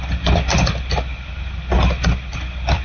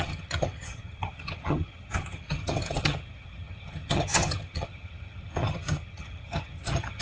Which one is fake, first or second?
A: second